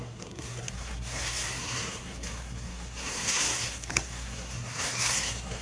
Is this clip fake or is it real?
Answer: fake